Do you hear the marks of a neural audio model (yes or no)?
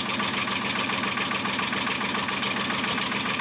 no